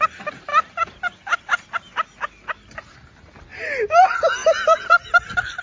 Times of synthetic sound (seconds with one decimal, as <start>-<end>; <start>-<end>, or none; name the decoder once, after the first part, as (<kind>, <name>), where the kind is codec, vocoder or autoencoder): 4.4-5.6 (vocoder, BigVGAN v2)